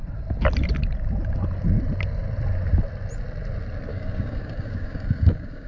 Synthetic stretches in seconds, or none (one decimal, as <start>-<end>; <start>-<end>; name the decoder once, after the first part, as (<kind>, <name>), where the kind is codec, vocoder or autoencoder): 3.9-5.7 (codec, DAC)